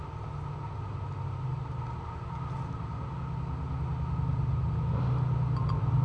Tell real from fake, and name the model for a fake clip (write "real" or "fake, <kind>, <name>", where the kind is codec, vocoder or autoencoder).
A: real